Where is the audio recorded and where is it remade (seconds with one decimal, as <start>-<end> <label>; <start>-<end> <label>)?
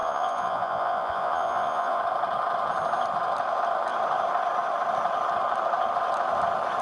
0.0-2.0 remade; 2.0-6.8 recorded